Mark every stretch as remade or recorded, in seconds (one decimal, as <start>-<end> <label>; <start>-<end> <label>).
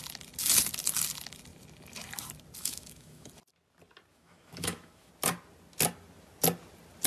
0.0-2.6 recorded; 2.6-3.3 remade; 3.3-4.1 recorded; 4.1-5.1 remade; 5.1-7.1 recorded